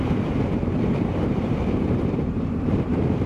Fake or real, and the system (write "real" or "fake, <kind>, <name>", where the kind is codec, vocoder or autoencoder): fake, vocoder, BigVGAN v2